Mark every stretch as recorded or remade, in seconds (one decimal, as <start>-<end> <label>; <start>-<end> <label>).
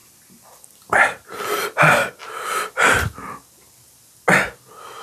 0.0-1.6 remade; 1.6-5.0 recorded